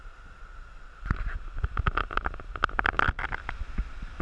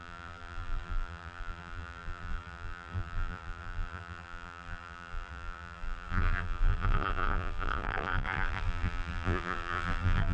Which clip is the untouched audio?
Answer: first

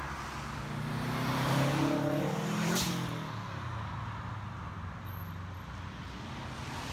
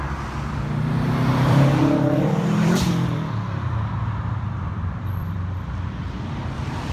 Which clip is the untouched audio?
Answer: first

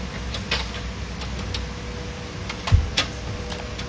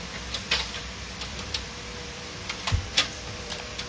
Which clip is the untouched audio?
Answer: first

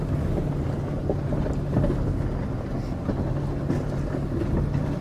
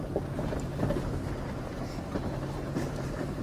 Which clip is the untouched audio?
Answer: first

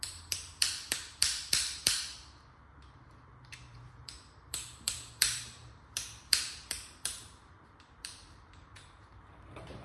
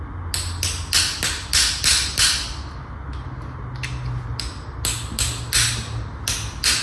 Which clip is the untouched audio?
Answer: second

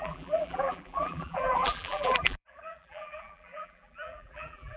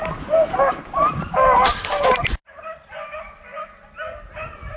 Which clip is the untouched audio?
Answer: second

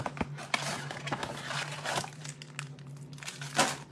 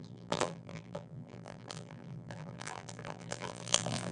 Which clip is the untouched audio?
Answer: first